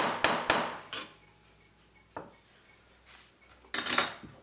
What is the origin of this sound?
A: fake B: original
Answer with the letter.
B